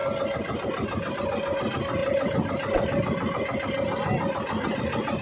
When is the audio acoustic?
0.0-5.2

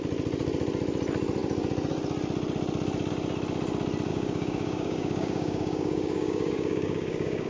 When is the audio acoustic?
0.0-4.1

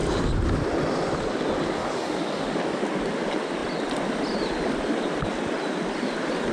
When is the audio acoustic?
0.0-1.8; 2.8-6.5